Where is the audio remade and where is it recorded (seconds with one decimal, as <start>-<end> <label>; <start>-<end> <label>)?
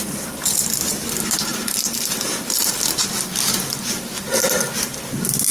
0.0-1.5 recorded; 1.5-2.3 remade; 2.3-5.5 recorded